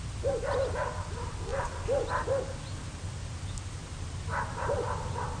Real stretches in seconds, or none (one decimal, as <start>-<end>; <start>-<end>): 0.0-5.4